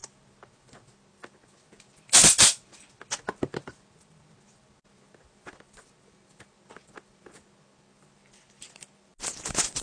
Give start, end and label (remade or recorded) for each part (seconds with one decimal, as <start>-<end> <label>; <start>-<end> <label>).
0.0-9.8 recorded